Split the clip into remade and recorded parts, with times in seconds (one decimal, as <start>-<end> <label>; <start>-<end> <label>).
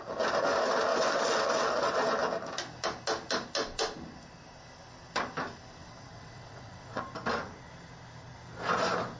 0.0-0.9 recorded; 0.9-1.9 remade; 1.9-5.8 recorded; 5.8-7.0 remade; 7.0-9.2 recorded